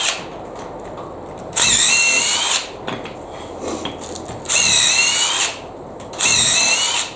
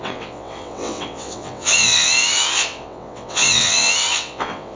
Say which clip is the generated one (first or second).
second